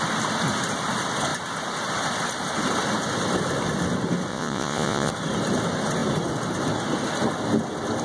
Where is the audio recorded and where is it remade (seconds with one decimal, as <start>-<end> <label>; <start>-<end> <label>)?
0.0-4.3 recorded; 4.3-5.1 remade; 5.1-8.0 recorded